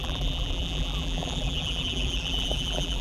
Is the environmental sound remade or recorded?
remade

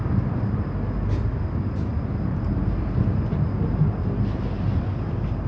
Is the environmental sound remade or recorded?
recorded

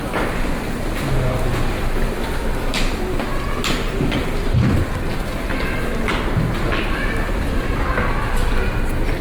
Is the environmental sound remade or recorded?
recorded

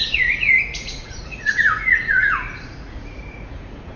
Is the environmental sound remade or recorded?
remade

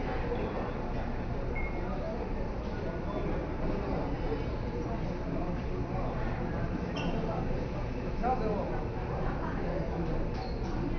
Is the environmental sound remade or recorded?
recorded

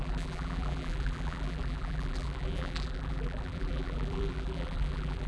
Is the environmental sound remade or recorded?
remade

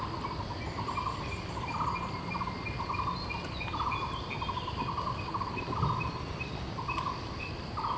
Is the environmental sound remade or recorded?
recorded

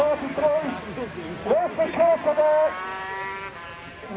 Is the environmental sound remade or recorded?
recorded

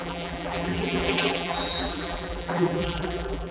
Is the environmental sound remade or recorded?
remade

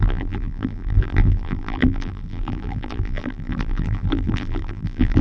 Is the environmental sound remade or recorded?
remade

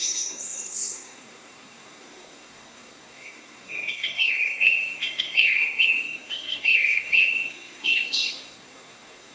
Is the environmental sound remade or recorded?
remade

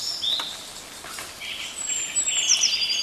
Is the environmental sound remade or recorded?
recorded